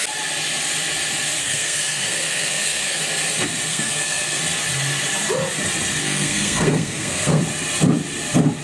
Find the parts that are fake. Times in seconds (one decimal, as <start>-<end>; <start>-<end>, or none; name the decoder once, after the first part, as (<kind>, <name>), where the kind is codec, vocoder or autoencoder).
1.4-3.0 (codec, SNAC); 3.7-4.4; 6.0-7.4